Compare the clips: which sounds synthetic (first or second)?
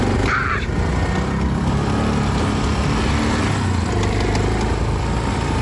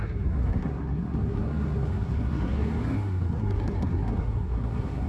second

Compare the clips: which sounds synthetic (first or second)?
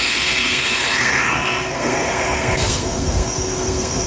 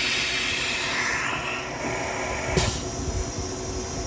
first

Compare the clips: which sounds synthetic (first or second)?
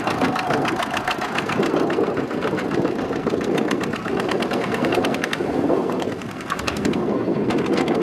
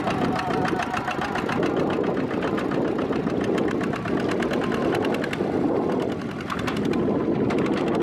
first